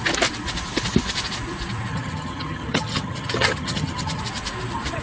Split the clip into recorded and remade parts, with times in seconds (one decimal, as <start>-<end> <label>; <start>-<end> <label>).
0.0-1.9 recorded; 1.9-4.2 remade; 4.2-5.0 recorded